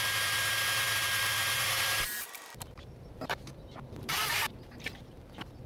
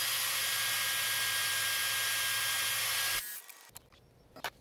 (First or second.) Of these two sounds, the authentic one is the second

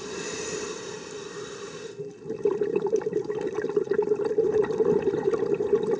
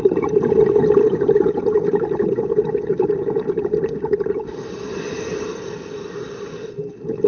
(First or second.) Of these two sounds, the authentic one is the second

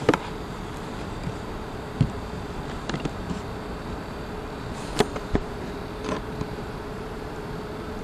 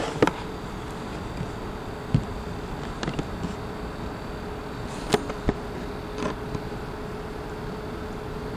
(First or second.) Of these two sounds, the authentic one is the second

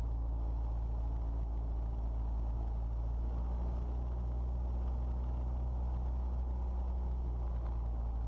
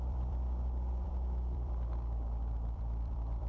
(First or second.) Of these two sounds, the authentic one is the first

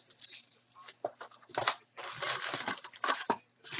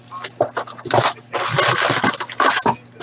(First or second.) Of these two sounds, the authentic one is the second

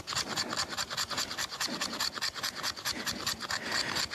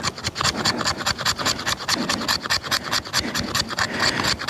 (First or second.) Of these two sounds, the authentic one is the second